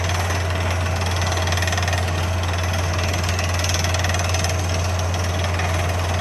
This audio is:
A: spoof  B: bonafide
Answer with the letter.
B